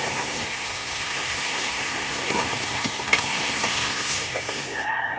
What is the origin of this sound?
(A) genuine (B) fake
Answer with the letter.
B